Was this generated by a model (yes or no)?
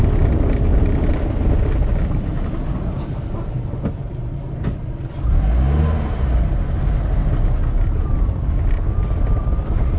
no